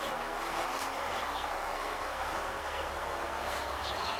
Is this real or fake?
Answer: fake